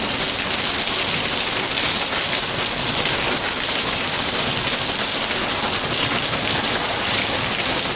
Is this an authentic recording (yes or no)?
yes